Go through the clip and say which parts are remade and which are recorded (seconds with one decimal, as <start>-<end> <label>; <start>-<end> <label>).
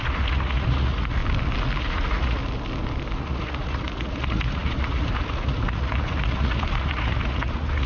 0.0-1.2 remade; 1.2-1.8 recorded; 1.8-2.4 remade; 2.4-3.2 recorded; 3.2-7.9 remade